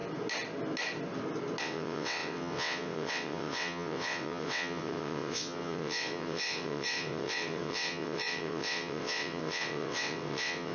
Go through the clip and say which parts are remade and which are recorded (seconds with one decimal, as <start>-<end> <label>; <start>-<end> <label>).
0.0-1.6 recorded; 1.6-10.7 remade